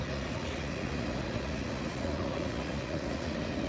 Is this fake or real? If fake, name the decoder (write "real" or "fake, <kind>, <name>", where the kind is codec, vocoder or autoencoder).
fake, vocoder, Vocos